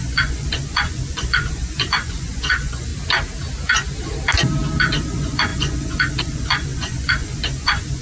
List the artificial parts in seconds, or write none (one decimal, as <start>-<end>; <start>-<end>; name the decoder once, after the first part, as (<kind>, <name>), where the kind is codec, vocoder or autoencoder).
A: 0.0-2.9 (vocoder, Vocos); 4.8-8.0